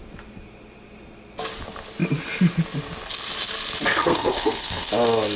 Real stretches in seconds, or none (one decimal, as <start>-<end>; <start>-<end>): 0.0-3.9; 4.9-5.4